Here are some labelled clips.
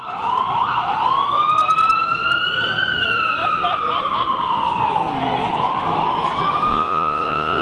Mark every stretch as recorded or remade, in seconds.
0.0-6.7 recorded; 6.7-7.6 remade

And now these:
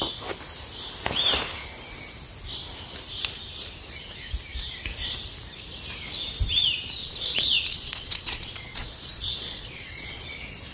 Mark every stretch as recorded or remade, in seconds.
0.0-7.0 recorded; 7.0-10.2 remade; 10.2-10.7 recorded

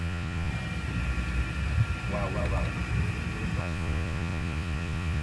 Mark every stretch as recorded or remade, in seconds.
0.0-0.5 remade; 0.5-3.6 recorded; 3.6-5.2 remade

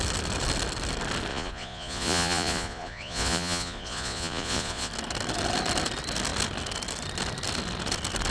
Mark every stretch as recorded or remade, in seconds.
0.0-1.3 recorded; 1.3-4.9 remade; 4.9-8.3 recorded

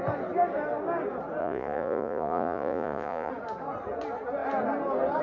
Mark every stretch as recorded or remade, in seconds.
0.0-1.4 recorded; 1.4-3.3 remade; 3.3-5.2 recorded

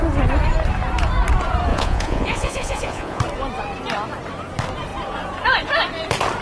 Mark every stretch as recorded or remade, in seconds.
0.0-1.7 recorded; 1.7-3.2 remade; 3.2-6.4 recorded